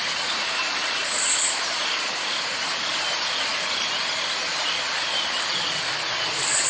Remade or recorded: recorded